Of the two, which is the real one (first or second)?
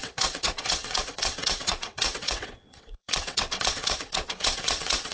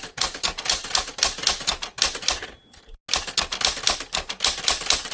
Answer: second